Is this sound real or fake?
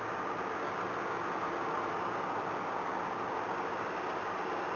real